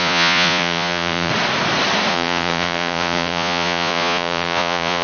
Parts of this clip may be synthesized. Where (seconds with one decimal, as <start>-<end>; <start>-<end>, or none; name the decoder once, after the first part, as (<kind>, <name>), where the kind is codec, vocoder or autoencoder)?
0.0-1.3 (vocoder, Vocos); 2.1-5.0